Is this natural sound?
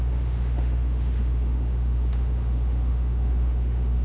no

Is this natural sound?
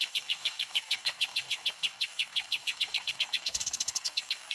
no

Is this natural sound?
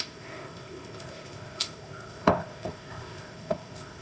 no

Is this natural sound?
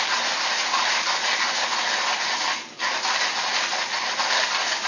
yes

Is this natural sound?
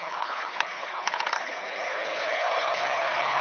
no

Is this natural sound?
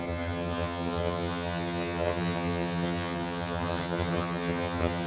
no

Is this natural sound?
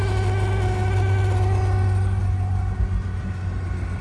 yes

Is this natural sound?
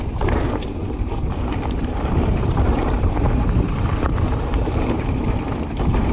no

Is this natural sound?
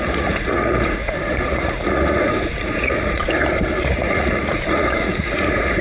no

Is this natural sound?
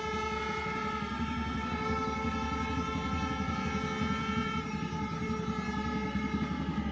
yes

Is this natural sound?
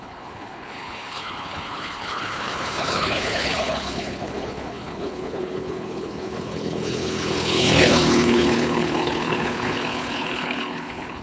no